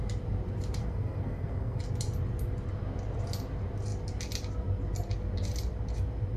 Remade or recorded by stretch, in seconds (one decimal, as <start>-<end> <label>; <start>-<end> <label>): 0.0-0.8 recorded; 0.8-1.8 remade; 1.8-6.4 recorded